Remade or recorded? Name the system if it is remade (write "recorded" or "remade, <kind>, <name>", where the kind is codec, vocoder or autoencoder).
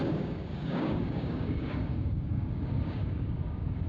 remade, codec, DAC